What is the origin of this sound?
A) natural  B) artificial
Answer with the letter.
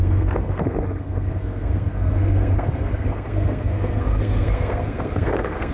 B